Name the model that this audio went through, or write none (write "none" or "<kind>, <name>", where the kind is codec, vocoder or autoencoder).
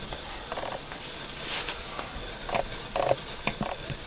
none